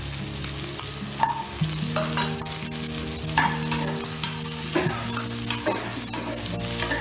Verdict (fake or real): real